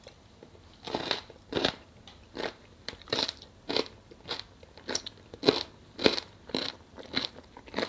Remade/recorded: remade